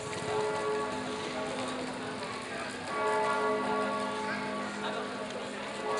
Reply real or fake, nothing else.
real